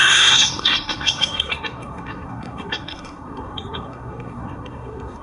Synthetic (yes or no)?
yes